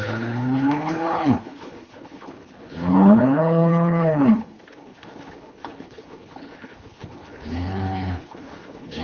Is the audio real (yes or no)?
no